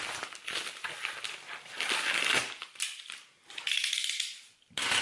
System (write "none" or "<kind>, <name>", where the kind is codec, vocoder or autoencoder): none